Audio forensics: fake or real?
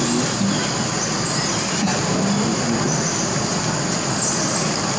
real